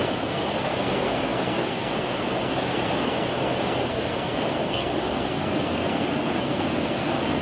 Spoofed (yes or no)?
yes